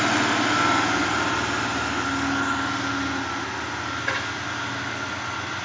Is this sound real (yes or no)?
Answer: yes